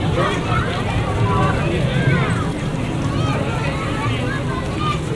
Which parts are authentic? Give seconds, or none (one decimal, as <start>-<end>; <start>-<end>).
0.0-5.2

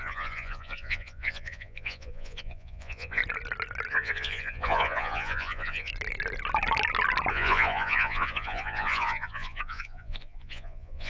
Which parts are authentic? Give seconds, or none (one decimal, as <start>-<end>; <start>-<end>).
3.2-3.9; 5.9-7.3

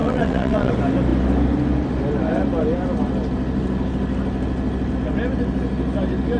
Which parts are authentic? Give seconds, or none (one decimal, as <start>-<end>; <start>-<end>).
0.7-6.4

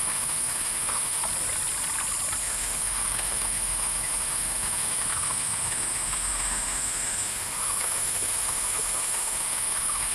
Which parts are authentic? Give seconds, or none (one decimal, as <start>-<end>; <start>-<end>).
1.2-2.4